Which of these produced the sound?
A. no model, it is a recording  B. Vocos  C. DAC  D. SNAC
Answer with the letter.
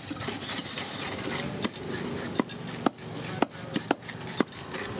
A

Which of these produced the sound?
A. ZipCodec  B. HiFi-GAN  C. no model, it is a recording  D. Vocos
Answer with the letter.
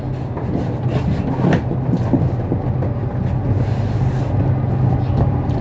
C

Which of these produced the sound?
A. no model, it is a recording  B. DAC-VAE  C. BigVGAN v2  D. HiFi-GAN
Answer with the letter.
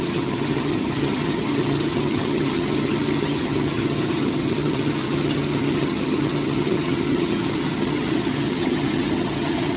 D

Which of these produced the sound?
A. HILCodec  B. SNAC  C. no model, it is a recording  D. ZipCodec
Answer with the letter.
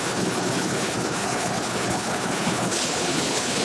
A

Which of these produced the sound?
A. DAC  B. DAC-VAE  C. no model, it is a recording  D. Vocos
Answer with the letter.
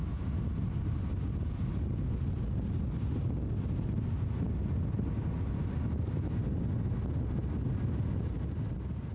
C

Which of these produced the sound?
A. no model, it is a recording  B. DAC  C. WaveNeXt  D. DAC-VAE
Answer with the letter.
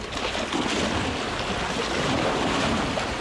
A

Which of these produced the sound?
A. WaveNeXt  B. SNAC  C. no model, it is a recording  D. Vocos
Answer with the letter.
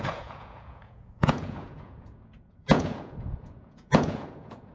D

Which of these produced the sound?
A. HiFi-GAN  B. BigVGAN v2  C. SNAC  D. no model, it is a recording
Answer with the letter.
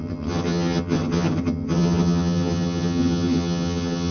A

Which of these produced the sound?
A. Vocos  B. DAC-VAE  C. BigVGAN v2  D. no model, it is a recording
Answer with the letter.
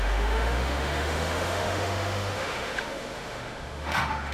B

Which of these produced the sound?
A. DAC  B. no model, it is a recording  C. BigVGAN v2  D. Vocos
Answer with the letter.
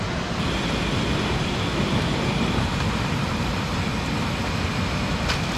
B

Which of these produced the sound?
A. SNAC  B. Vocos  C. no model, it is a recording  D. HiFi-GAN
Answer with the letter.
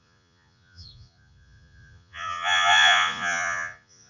B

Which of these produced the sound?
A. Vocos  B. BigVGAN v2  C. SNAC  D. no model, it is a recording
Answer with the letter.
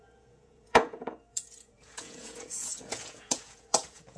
A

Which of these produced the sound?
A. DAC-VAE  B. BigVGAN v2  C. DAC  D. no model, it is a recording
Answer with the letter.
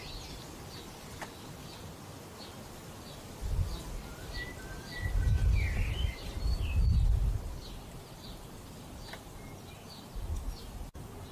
D